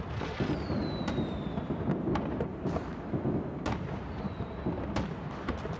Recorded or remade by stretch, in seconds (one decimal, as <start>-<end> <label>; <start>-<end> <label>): 0.0-2.5 recorded; 2.5-3.4 remade; 3.4-5.8 recorded